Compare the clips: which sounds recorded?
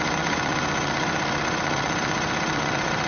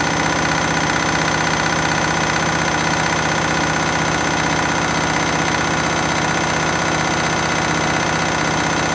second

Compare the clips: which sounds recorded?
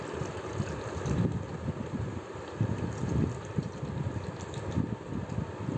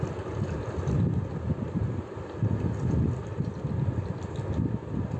second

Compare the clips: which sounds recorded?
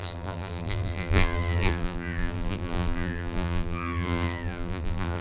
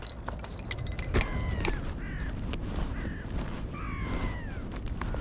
second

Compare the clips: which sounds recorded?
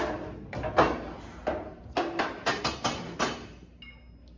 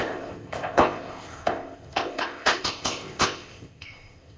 first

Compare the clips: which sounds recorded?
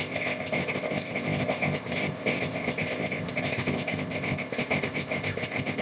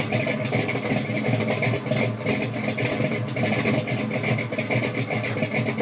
second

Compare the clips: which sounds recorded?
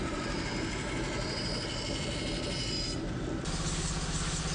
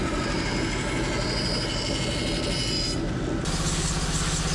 second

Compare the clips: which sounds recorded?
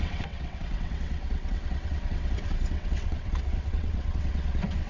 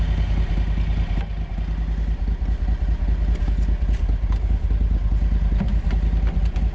second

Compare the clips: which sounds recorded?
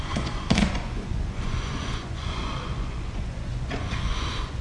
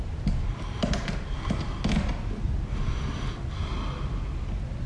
second